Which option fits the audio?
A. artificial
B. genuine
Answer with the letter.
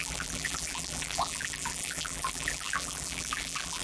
A